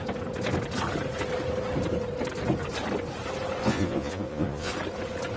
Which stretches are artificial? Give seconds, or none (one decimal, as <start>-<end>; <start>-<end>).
3.6-4.7